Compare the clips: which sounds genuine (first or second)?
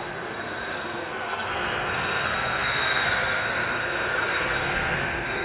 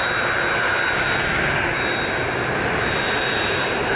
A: second